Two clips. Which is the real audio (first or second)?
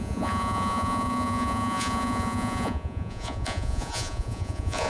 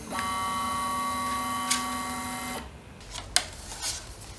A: second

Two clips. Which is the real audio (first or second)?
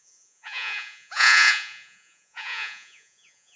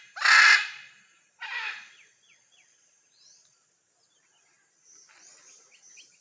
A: second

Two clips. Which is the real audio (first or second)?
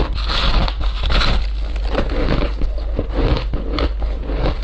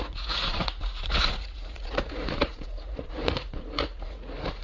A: first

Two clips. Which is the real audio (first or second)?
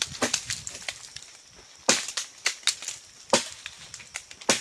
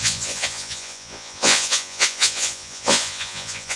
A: first